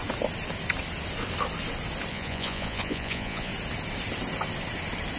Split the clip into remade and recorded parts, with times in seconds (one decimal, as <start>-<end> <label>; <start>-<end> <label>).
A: 0.0-2.1 recorded; 2.1-3.5 remade; 3.5-5.2 recorded